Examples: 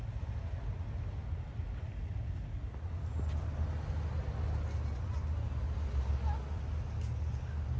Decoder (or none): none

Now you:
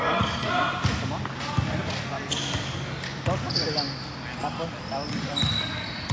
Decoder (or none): none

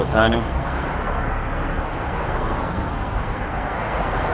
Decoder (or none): codec, SNAC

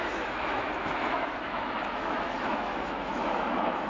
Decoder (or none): autoencoder, DAC-VAE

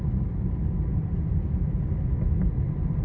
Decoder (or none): none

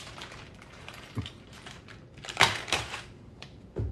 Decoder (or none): vocoder, BigVGAN v2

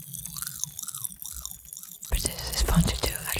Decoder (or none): none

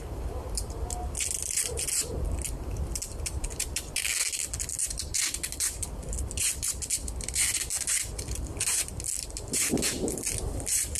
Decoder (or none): none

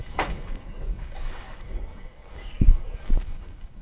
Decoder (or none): codec, DAC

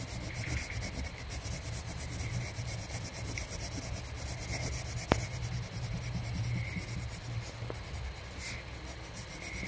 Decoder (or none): none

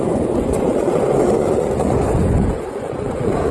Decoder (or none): vocoder, Vocos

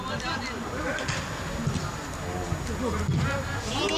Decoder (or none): none